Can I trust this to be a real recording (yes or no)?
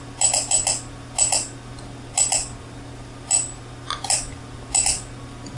yes